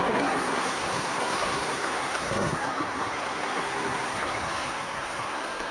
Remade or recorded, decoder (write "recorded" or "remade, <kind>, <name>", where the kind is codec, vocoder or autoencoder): remade, codec, SNAC